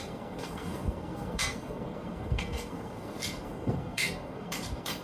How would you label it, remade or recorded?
remade